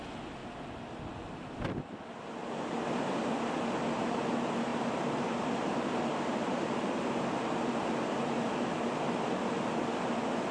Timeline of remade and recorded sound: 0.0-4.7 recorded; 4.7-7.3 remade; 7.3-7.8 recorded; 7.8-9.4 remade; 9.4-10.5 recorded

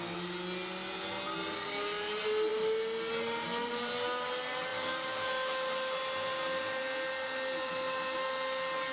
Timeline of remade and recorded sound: 0.0-8.9 recorded

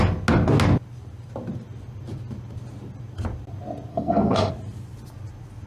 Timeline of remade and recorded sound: 0.0-3.9 recorded; 3.9-4.5 remade; 4.5-5.7 recorded

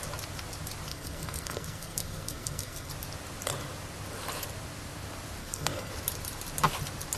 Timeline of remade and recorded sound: 0.0-0.9 recorded; 0.9-2.9 remade; 2.9-5.4 recorded; 5.4-5.9 remade; 5.9-7.2 recorded